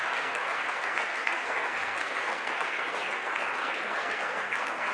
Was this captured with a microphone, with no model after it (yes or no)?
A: no